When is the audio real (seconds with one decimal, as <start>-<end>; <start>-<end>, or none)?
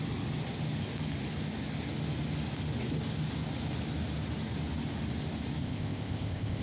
0.0-5.6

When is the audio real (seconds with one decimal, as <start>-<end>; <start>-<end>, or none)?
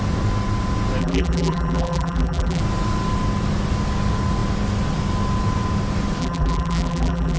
0.0-1.0; 2.6-6.2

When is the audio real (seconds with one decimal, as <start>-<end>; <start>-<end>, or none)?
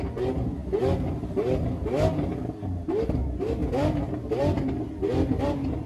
0.0-5.9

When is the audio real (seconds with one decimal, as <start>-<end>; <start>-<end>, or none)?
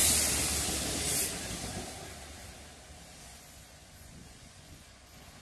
0.0-3.2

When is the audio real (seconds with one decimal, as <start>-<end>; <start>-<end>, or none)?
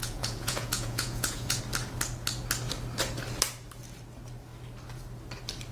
1.6-5.7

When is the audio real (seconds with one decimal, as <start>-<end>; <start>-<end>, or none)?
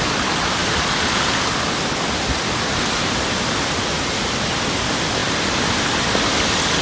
0.0-6.8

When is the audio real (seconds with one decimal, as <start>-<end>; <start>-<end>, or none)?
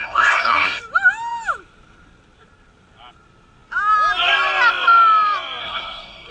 0.8-5.6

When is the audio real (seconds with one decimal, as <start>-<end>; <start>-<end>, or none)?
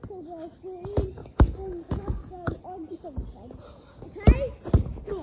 0.0-1.2; 2.6-5.2